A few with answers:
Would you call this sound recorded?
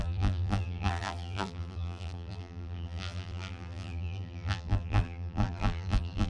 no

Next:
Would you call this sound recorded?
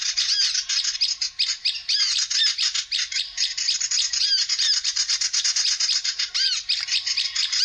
yes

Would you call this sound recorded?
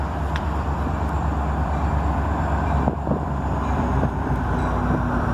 no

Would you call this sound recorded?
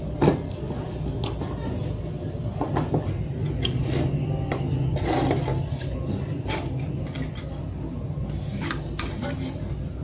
yes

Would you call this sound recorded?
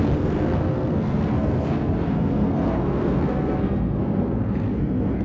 no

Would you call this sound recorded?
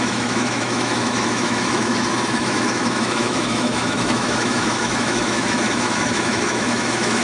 no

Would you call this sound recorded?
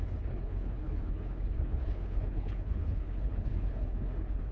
no